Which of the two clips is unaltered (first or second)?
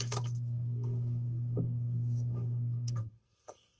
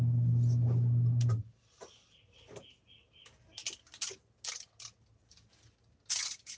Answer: second